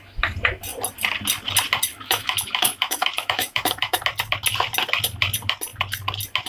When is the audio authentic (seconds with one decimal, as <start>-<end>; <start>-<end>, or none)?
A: 0.0-1.9; 4.0-6.5